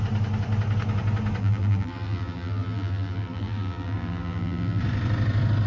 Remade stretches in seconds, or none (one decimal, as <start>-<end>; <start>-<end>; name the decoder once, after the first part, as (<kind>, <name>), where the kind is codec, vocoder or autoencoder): 1.4-4.8 (vocoder, BigVGAN v2)